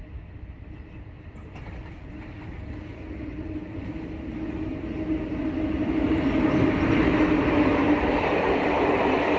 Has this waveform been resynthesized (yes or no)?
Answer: no